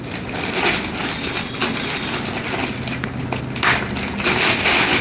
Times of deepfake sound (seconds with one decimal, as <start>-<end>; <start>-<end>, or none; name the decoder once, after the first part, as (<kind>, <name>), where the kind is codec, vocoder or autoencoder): none